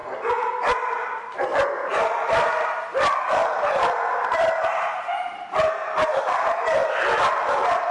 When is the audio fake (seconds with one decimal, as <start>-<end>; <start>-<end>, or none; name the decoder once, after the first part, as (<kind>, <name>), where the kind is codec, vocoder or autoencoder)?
1.9-6.5 (vocoder, BigVGAN v2)